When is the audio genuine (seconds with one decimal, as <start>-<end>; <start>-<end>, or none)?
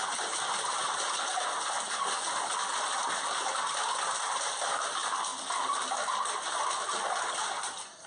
0.0-8.1